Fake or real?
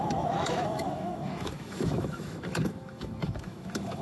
fake